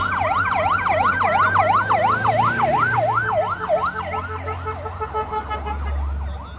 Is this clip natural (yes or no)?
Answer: yes